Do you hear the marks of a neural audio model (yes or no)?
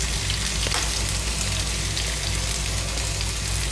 no